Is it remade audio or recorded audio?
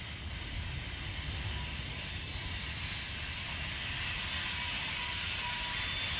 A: recorded